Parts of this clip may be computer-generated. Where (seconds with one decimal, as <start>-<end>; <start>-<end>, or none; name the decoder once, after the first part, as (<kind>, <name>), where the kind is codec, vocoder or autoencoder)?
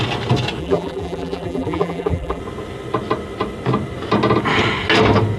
0.6-2.4 (vocoder, BigVGAN v2)